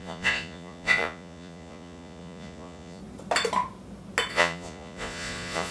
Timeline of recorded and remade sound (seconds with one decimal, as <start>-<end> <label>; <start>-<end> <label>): 0.0-3.0 remade; 3.0-4.3 recorded; 4.3-5.7 remade